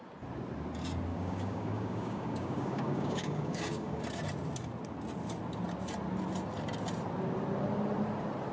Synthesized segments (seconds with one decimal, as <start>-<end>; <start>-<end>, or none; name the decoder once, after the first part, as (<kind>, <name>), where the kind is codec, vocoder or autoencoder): 1.1-4.0 (codec, DAC)